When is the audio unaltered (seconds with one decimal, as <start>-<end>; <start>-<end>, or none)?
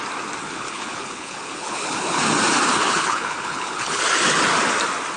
0.0-0.4; 2.2-2.7; 4.0-5.2